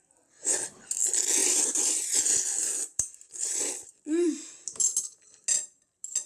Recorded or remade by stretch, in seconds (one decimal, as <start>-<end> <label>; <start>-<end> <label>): 0.0-1.4 recorded; 1.4-5.2 remade; 5.2-6.3 recorded